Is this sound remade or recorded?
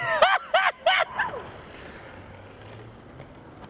recorded